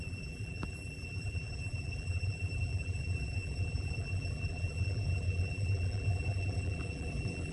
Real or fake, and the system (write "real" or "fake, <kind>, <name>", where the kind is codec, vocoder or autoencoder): fake, vocoder, BigVGAN v2